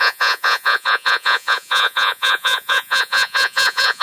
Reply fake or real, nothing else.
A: fake